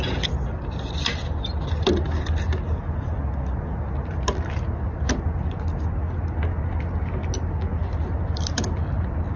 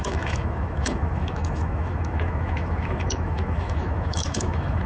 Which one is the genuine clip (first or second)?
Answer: first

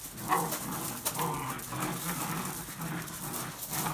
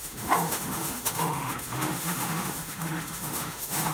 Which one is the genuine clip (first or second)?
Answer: first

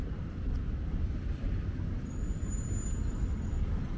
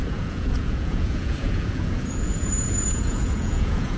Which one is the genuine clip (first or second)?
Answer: first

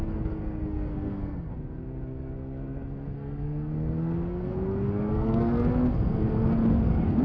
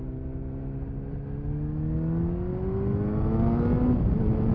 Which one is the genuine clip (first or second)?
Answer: second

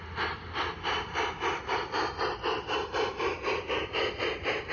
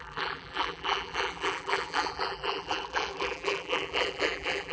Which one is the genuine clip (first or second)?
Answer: first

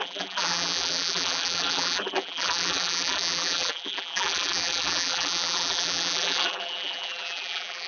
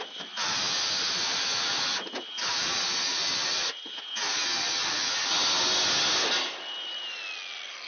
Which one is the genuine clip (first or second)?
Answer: second